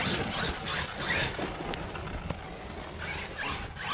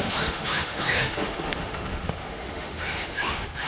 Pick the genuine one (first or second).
first